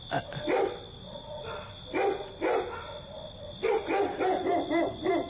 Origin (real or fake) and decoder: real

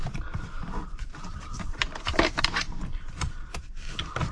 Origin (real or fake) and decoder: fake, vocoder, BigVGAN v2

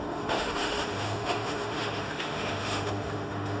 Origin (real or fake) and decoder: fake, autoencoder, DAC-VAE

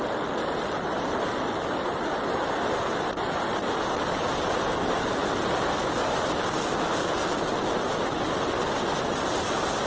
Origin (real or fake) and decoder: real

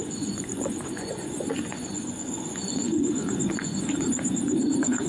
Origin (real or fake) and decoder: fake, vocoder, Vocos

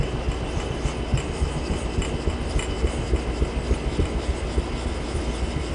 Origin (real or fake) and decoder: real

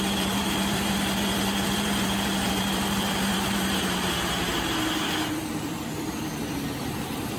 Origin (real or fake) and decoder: fake, vocoder, BigVGAN v2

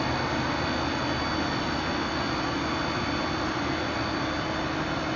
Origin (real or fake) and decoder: real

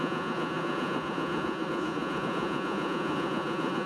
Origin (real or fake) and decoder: fake, vocoder, Vocos